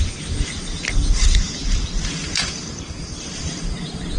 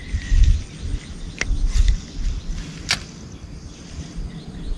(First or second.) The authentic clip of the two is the second